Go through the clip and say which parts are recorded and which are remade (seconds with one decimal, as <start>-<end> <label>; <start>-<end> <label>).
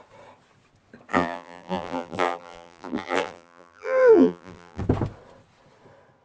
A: 0.0-1.1 recorded; 1.1-4.8 remade; 4.8-6.2 recorded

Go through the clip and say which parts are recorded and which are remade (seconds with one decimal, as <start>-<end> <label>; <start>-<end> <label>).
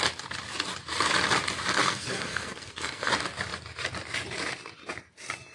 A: 0.0-1.8 recorded; 1.8-3.1 remade; 3.1-5.5 recorded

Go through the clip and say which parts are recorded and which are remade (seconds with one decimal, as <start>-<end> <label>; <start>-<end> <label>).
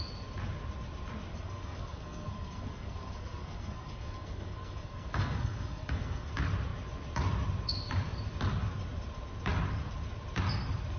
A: 0.0-1.3 recorded; 1.3-6.3 remade; 6.3-11.0 recorded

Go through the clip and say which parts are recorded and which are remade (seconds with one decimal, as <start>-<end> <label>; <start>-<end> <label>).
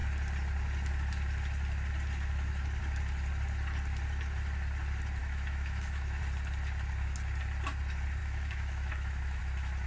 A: 0.0-5.2 recorded; 5.2-6.2 remade; 6.2-8.2 recorded; 8.2-9.4 remade; 9.4-9.9 recorded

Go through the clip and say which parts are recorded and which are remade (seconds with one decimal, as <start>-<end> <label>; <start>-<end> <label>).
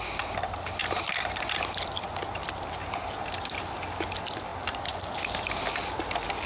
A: 0.0-6.5 recorded